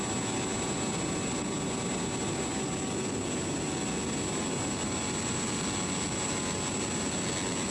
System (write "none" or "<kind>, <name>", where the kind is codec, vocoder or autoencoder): none